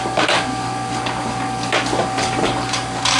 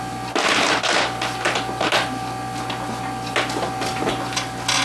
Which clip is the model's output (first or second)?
first